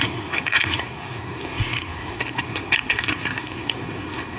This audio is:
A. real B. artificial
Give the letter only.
B